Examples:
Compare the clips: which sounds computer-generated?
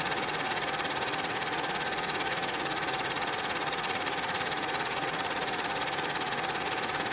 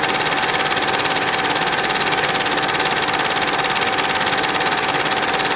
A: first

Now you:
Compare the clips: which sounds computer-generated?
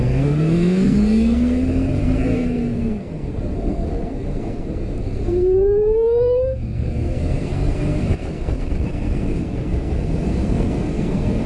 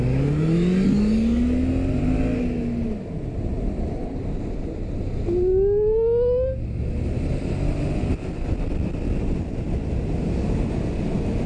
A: first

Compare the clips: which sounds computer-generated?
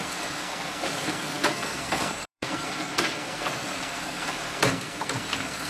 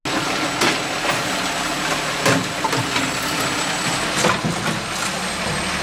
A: first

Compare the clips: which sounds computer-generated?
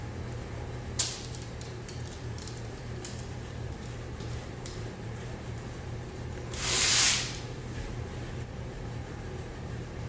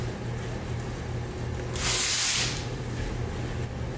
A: first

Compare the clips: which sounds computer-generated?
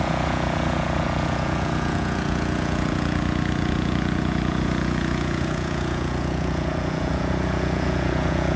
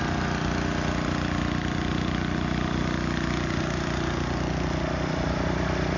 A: first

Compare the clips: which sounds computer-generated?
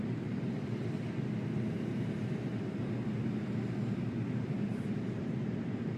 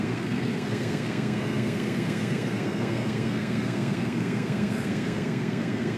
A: second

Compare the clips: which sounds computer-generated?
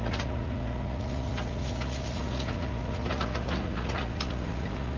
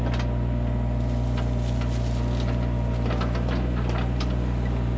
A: first